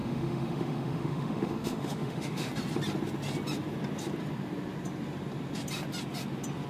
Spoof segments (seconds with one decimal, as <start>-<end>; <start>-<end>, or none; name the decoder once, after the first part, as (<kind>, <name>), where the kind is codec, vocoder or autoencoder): 0.0-2.5 (autoencoder, DAC-VAE)